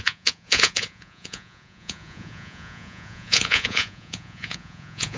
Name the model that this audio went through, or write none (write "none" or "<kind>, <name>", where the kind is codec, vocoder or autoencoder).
vocoder, Vocos